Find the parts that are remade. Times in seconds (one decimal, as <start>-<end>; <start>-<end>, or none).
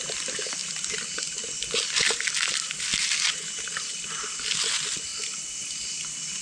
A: none